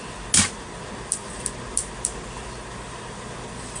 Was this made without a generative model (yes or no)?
yes